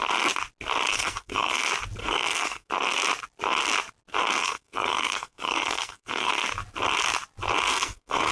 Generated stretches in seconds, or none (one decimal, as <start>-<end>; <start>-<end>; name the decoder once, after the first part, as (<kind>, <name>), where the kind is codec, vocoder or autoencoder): 0.9-1.6 (codec, SNAC); 2.0-2.7; 4.4-6.3; 7.7-8.3